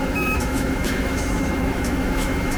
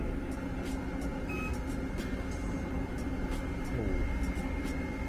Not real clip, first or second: first